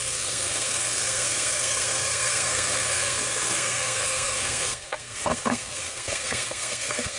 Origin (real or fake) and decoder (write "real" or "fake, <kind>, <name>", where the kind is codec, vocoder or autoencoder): fake, codec, SNAC